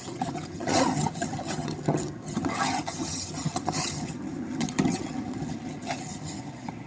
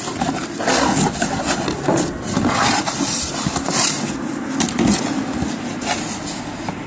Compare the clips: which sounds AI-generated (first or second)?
first